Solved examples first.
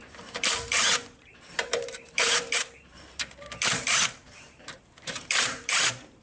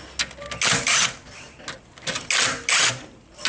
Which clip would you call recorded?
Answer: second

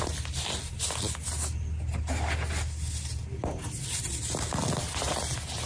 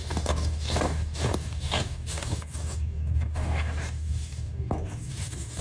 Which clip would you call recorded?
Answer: first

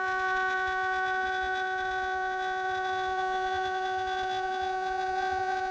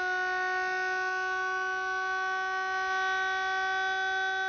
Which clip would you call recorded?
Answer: second